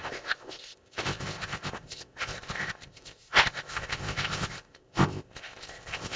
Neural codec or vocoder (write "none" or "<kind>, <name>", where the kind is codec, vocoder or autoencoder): codec, ZipCodec